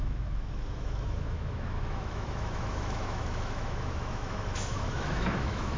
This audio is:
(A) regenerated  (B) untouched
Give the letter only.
A